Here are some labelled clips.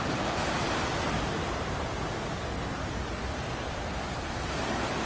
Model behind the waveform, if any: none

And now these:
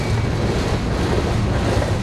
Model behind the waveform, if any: none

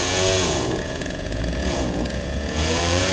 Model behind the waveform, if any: vocoder, Vocos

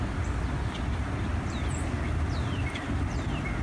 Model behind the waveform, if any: none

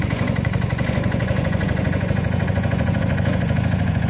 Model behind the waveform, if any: vocoder, Vocos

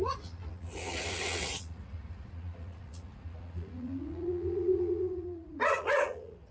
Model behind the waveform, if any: vocoder, Vocos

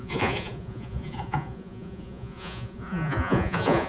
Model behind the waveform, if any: vocoder, Vocos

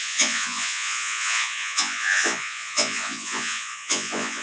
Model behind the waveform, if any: vocoder, Vocos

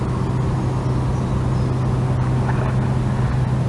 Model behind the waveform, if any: none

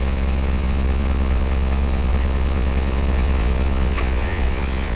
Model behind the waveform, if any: vocoder, Vocos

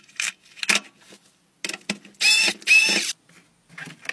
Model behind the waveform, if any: none